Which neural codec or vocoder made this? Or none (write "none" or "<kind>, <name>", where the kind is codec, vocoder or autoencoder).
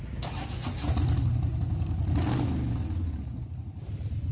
none